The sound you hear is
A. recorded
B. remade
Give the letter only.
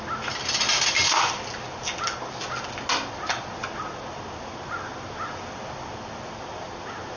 A